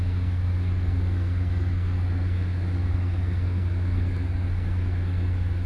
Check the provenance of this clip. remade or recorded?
remade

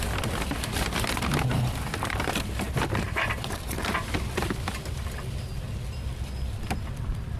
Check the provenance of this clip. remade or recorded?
remade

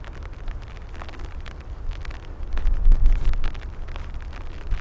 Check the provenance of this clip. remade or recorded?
recorded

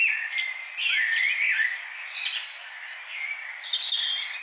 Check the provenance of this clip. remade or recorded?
recorded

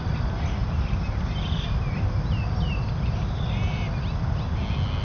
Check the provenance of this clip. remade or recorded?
recorded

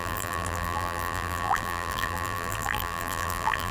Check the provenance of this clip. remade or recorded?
remade